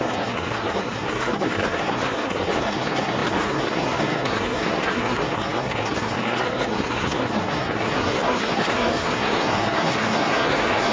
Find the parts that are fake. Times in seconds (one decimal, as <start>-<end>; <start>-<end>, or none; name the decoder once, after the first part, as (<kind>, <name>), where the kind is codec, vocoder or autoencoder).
0.0-10.9 (codec, SNAC)